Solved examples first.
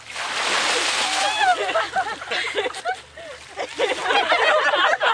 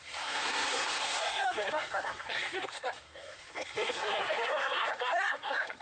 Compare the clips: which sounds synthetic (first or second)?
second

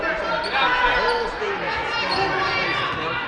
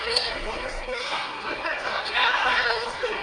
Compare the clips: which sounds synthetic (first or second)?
second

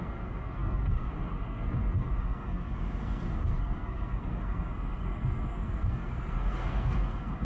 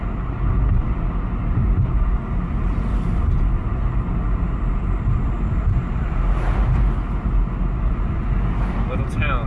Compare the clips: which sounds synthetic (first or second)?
first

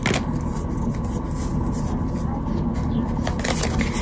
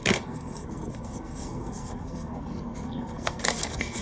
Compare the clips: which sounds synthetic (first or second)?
second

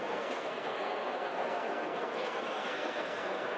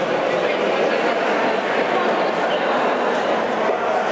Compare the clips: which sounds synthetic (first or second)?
first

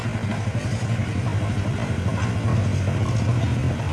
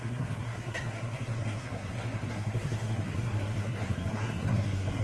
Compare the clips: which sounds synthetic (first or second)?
second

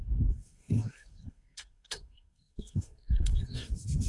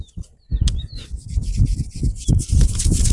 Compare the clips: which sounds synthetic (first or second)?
first